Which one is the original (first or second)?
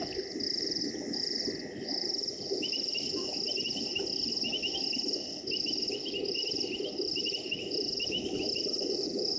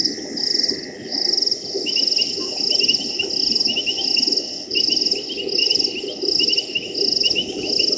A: second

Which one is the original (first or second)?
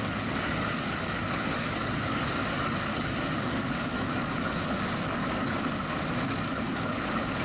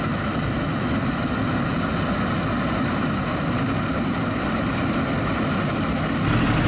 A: second